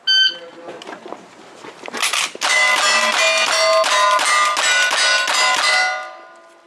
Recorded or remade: recorded